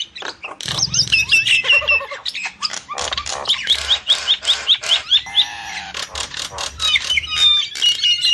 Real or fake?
fake